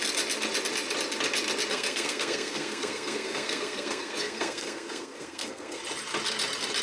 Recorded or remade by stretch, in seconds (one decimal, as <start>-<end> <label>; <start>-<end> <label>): 0.0-1.7 recorded; 1.7-5.8 remade; 5.8-6.8 recorded